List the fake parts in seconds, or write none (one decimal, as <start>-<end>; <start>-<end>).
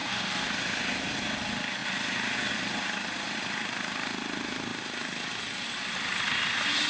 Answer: 0.0-0.5